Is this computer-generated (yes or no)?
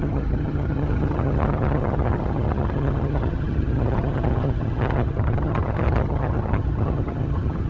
yes